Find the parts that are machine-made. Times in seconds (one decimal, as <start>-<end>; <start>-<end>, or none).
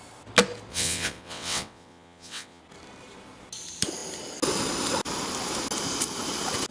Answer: 0.7-2.6